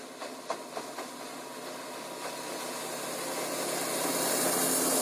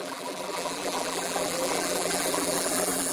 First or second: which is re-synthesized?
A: second